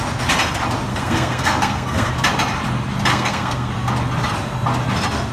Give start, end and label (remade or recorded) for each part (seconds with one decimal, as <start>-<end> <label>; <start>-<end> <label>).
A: 0.0-0.9 recorded; 0.9-2.1 remade; 2.1-3.1 recorded; 3.1-3.7 remade; 3.7-5.3 recorded